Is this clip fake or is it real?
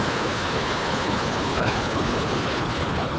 fake